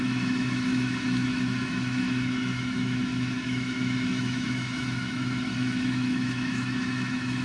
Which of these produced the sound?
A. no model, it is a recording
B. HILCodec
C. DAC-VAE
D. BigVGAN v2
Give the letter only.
C